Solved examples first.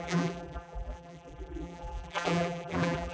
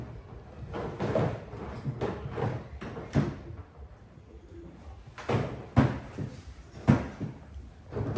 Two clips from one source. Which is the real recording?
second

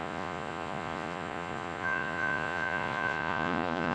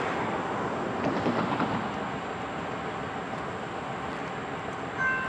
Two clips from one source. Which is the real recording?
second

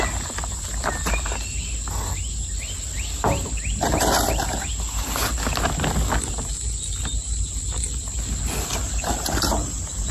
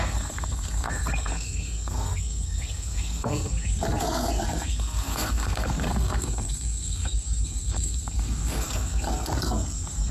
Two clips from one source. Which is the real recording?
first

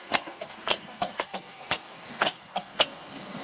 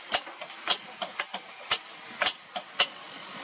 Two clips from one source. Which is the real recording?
second